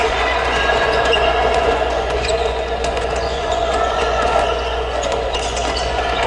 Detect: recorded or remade remade